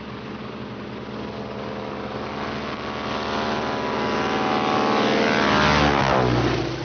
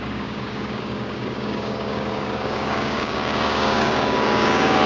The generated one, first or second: second